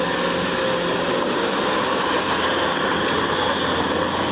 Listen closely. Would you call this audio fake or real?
real